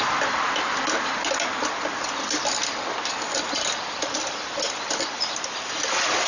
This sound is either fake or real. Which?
real